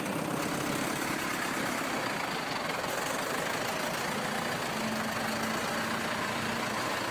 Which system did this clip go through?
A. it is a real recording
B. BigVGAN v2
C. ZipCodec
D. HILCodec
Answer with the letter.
A